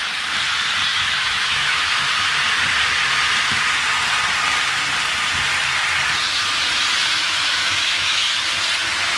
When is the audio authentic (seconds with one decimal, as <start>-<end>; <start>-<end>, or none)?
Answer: 0.0-0.9; 2.1-7.0; 8.3-9.2